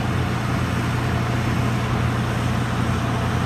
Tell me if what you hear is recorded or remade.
recorded